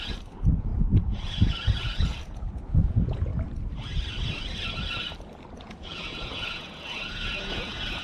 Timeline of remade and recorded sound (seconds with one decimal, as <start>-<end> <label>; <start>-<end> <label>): 0.0-3.3 remade; 3.3-5.5 recorded; 5.5-8.0 remade